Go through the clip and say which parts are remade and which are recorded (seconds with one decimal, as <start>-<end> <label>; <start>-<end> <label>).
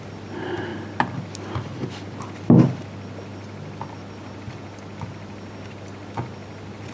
0.0-0.7 recorded; 0.7-3.9 remade; 3.9-6.9 recorded